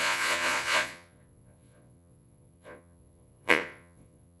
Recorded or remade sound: remade